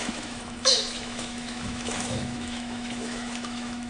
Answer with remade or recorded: remade